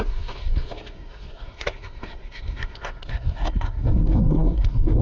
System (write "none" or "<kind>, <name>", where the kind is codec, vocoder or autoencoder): codec, SNAC